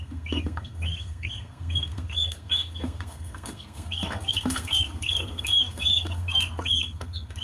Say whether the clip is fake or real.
fake